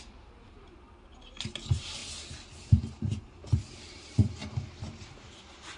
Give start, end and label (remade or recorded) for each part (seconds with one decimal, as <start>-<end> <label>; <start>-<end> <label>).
0.0-2.0 remade; 2.0-2.6 recorded; 2.6-3.4 remade; 3.4-3.9 recorded; 3.9-5.8 remade